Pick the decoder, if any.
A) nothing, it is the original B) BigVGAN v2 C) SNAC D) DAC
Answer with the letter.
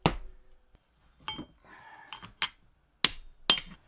A